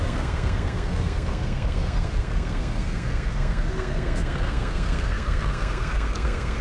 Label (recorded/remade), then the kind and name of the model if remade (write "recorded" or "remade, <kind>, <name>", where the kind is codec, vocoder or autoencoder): remade, codec, SNAC